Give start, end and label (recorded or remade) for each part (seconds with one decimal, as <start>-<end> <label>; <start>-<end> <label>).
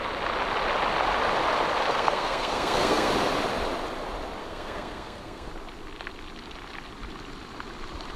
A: 0.0-1.9 recorded; 1.9-3.1 remade; 3.1-4.4 recorded; 4.4-5.5 remade; 5.5-8.2 recorded